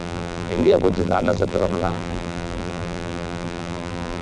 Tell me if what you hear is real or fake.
fake